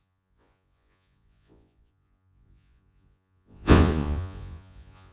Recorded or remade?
remade